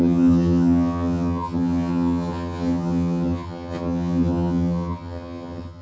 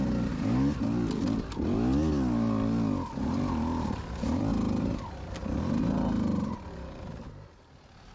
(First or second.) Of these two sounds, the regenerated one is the first